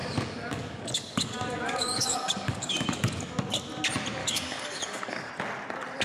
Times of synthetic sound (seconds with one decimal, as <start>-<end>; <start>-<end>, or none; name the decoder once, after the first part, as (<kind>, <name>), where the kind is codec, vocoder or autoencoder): 0.0-3.6 (codec, DAC); 4.2-5.3